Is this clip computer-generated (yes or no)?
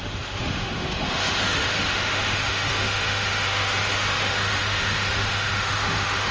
yes